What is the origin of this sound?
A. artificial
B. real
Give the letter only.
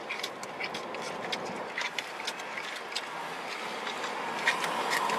B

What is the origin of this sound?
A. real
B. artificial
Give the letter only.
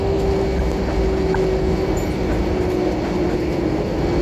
A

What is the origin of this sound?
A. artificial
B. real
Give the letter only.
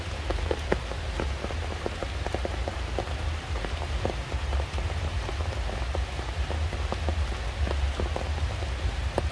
B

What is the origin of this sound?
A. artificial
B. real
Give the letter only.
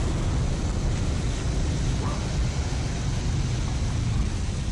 B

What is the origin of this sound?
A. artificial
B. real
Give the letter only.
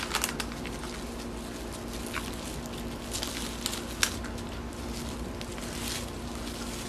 B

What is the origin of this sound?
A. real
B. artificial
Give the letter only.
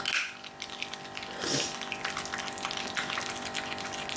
A